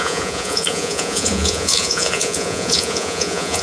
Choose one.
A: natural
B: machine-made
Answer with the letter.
B